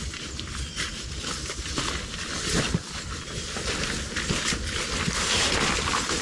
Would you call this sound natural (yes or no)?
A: yes